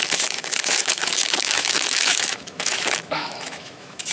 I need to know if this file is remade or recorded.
remade